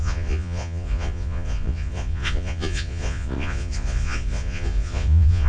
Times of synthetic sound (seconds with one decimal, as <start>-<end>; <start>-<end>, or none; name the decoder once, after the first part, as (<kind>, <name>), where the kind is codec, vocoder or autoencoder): 0.0-5.5 (vocoder, Vocos)